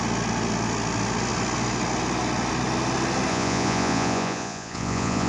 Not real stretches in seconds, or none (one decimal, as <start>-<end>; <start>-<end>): 3.3-5.3